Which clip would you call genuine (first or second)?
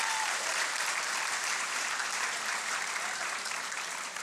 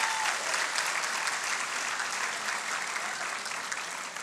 second